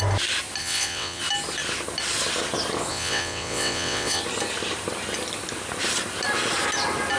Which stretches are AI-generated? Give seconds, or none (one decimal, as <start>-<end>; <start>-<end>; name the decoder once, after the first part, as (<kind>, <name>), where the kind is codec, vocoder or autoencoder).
0.6-1.2 (vocoder, WaveNeXt); 2.9-4.2